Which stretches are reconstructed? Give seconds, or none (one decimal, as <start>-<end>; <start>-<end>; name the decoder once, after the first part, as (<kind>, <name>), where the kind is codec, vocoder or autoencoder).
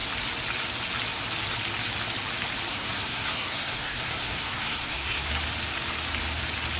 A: 2.7-5.3 (codec, SNAC)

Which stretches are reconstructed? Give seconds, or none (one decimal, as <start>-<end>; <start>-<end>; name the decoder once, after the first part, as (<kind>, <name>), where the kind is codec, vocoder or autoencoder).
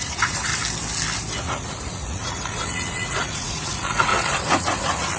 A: 0.0-0.5 (vocoder, Vocos); 1.4-5.2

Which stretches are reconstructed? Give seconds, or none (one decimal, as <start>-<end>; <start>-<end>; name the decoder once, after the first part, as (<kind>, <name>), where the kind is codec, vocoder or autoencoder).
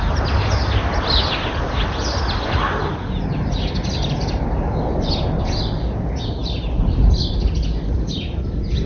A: none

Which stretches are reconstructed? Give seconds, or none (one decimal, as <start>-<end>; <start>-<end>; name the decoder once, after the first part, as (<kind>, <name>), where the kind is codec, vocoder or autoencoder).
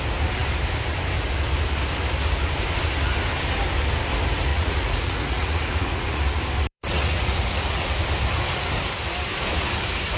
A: 4.5-6.2 (vocoder, Vocos); 6.7-8.0